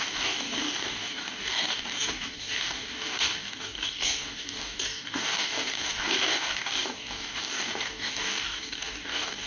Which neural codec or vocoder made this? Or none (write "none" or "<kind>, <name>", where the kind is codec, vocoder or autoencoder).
codec, DAC